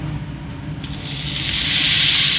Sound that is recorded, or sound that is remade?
recorded